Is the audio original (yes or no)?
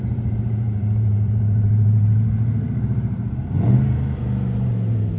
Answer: no